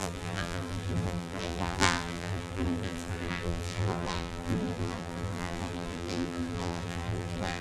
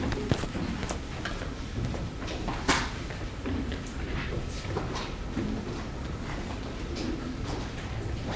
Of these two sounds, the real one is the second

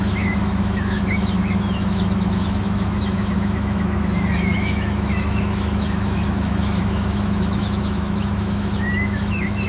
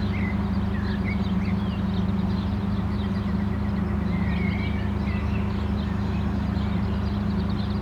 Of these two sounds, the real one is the second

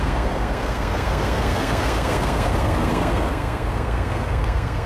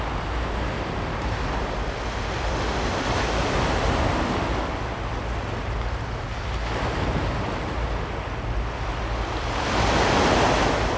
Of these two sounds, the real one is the second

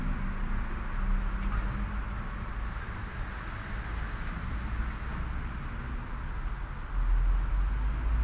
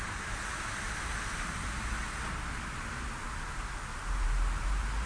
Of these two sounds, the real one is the first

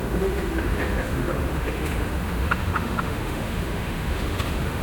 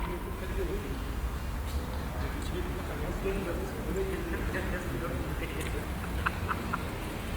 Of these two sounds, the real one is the second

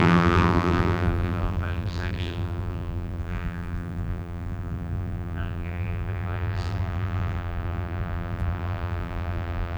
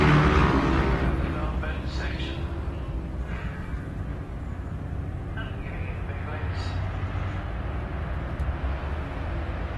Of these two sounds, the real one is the second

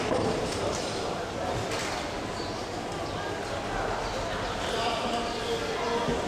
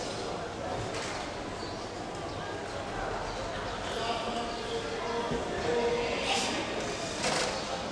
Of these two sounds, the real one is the second